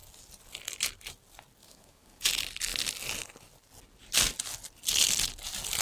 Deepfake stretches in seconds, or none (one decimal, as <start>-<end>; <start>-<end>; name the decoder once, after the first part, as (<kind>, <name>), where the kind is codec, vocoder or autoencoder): 1.6-2.3 (autoencoder, DAC-VAE)